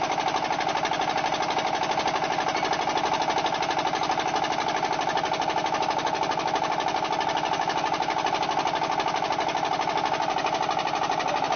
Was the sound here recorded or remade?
recorded